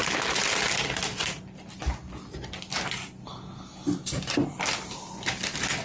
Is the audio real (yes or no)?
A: yes